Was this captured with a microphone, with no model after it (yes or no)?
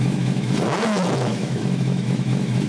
no